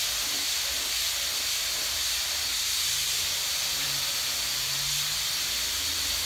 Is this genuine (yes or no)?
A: yes